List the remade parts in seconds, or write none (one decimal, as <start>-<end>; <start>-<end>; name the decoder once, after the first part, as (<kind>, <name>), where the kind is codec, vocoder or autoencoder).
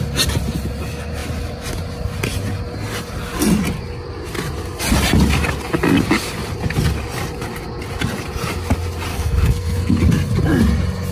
9.1-10.0 (codec, SNAC)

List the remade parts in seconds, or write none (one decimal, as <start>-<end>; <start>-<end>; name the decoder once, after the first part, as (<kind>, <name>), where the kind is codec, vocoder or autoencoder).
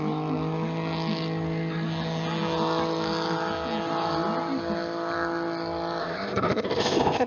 6.0-7.3 (codec, ZipCodec)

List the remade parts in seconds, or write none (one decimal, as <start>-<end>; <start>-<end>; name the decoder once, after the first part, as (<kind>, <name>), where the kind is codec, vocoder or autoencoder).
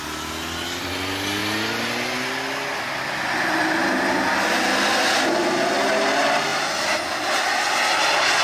none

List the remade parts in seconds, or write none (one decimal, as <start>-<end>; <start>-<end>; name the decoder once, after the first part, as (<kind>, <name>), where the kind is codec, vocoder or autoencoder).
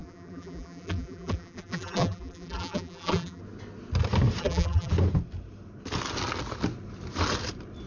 0.0-3.4 (vocoder, BigVGAN v2); 4.4-4.9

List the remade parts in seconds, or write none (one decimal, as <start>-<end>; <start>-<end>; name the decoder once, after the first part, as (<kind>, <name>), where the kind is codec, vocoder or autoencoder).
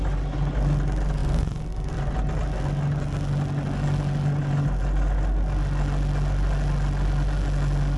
none